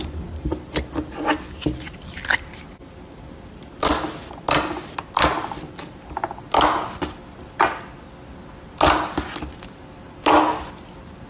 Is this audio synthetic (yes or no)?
no